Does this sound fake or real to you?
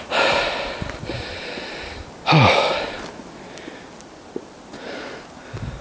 real